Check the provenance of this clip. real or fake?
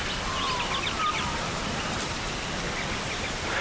real